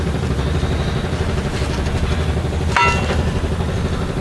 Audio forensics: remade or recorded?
recorded